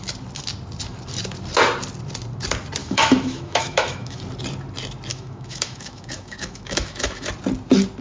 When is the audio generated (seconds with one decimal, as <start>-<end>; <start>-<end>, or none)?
2.8-4.2; 5.1-7.3